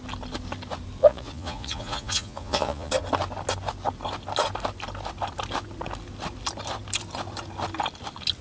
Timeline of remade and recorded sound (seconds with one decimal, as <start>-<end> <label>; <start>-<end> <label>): 0.0-1.0 recorded; 1.0-2.9 remade; 2.9-8.4 recorded